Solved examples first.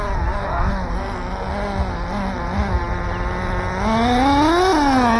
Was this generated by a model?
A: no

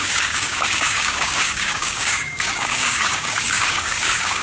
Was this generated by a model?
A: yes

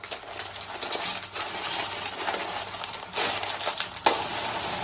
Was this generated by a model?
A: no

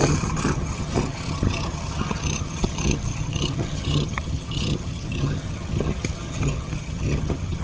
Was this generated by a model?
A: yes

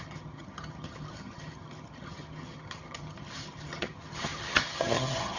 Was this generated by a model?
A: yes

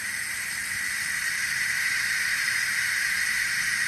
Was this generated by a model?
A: yes